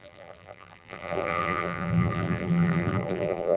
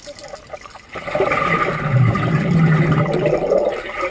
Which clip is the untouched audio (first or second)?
second